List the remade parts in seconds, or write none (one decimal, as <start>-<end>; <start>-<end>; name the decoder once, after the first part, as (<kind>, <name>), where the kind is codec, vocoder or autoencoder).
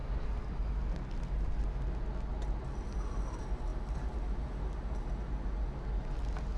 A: none